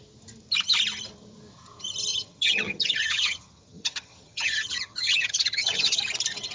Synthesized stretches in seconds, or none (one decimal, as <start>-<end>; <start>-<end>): 2.1-6.0